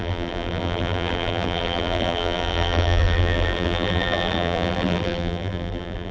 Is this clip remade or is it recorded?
remade